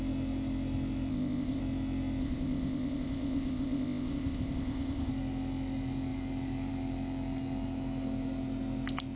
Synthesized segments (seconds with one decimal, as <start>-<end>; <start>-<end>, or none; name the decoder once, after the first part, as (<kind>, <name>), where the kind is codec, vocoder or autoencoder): 1.1-1.6 (codec, ZipCodec); 2.2-5.1